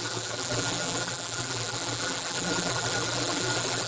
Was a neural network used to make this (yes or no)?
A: yes